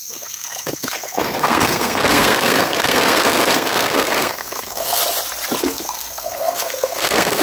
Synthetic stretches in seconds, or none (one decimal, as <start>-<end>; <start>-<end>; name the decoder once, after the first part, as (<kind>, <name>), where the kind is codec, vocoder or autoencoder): 0.0-5.0 (codec, SNAC); 5.6-7.4